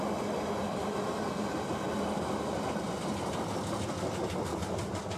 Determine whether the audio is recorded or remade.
recorded